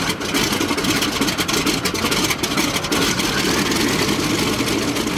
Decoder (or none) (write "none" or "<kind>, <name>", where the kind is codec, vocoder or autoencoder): none